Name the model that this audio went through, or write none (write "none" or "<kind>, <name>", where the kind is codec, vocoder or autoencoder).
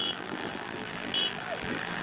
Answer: vocoder, BigVGAN v2